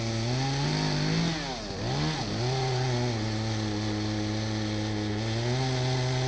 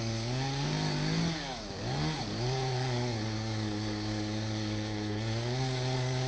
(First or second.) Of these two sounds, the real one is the first